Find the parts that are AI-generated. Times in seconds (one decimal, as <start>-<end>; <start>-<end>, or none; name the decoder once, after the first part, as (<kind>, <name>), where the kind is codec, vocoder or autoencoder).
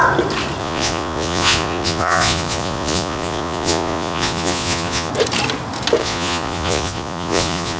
0.6-5.1 (vocoder, Vocos); 6.0-7.8